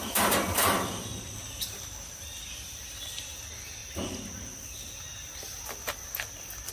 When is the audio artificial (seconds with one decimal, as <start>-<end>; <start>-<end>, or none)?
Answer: 0.0-1.1; 2.2-3.8